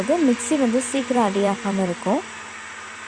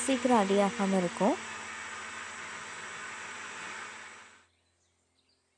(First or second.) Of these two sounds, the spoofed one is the first